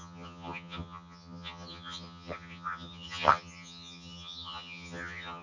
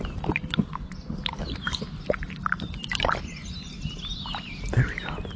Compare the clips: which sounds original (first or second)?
second